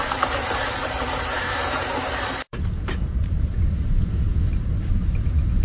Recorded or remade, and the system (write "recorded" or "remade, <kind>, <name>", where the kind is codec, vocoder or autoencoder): remade, vocoder, BigVGAN v2